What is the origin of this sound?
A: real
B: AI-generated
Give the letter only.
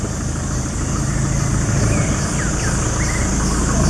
A